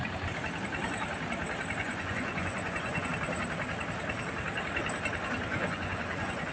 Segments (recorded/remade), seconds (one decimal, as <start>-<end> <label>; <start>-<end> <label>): 0.0-1.8 recorded; 1.8-3.1 remade; 3.1-5.5 recorded; 5.5-6.5 remade